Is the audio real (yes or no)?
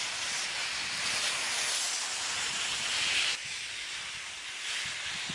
yes